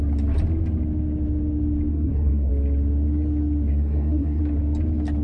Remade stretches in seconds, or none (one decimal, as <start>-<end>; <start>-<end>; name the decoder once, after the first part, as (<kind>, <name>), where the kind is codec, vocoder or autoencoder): 1.9-2.5 (codec, SNAC); 3.7-4.4